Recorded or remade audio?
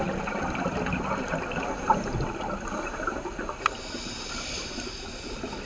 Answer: recorded